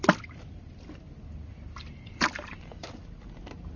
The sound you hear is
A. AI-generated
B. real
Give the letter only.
B